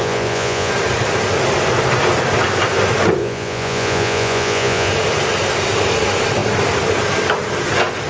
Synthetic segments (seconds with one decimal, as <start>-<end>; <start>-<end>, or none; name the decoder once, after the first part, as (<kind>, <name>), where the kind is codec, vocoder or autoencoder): 0.0-0.7 (vocoder, Vocos); 3.2-4.9